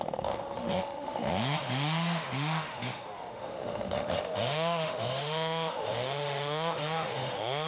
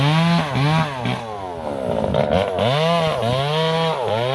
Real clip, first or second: second